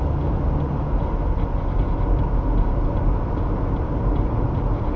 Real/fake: real